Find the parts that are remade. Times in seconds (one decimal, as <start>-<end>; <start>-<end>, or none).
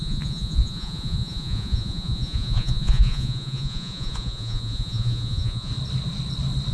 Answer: 0.0-5.7